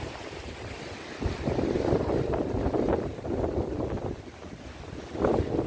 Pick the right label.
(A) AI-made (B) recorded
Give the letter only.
B